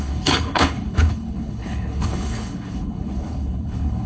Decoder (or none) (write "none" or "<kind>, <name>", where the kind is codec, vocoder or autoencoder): codec, HILCodec